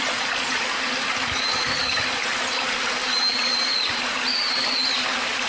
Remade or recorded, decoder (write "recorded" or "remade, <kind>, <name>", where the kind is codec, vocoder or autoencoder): recorded